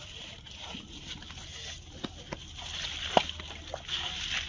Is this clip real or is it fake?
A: real